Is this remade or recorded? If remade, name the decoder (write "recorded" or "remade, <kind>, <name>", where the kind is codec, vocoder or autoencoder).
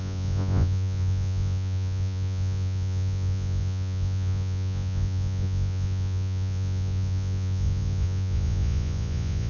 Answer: remade, vocoder, Vocos